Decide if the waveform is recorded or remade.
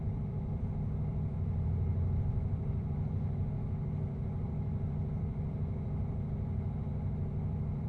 remade